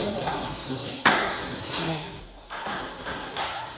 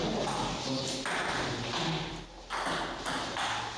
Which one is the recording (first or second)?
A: second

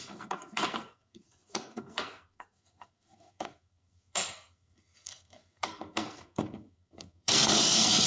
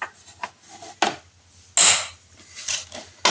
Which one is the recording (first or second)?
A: second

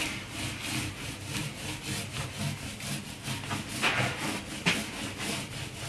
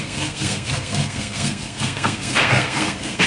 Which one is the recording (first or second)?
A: first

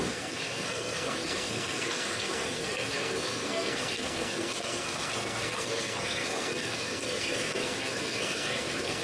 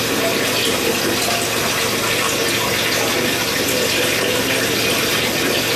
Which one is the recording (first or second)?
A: second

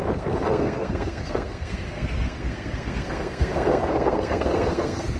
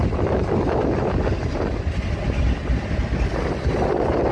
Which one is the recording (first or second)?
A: second